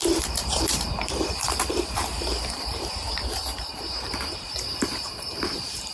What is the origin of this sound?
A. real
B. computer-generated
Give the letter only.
B